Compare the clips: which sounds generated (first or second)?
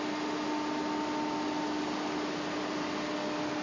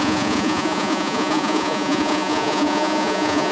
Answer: second